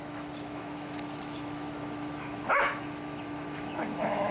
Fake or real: fake